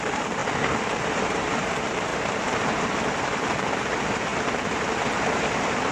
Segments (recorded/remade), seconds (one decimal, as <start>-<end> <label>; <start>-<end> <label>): 0.0-0.4 remade; 0.4-1.1 recorded; 1.1-5.9 remade